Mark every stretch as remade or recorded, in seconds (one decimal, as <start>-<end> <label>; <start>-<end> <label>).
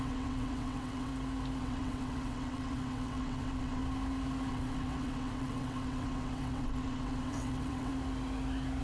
0.0-1.1 remade; 1.1-1.6 recorded; 1.6-3.8 remade; 3.8-4.5 recorded; 4.5-7.9 remade; 7.9-8.8 recorded